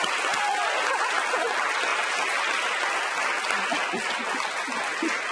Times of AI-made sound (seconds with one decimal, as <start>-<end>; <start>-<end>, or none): none